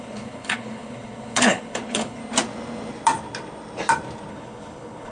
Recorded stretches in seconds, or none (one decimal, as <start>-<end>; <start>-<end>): 2.2-4.3